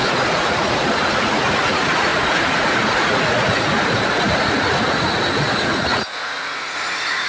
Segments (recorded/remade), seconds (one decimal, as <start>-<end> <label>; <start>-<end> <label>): 0.0-7.3 remade